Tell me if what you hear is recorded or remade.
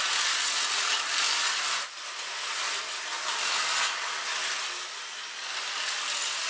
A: recorded